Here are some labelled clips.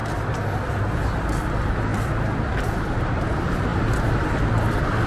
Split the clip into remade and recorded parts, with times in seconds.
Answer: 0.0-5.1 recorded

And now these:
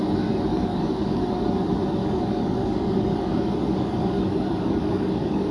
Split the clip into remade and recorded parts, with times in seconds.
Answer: 0.0-0.5 recorded; 0.5-1.2 remade; 1.2-2.0 recorded; 2.0-5.5 remade

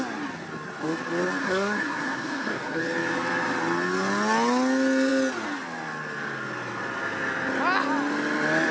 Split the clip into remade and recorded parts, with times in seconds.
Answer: 0.0-1.4 recorded; 1.4-2.8 remade; 2.8-8.7 recorded